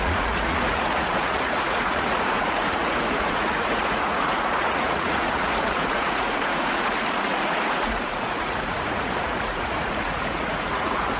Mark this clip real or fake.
fake